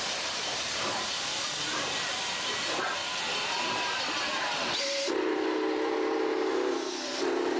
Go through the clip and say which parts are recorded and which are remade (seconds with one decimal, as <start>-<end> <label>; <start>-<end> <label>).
0.0-3.0 remade; 3.0-3.6 recorded; 3.6-7.6 remade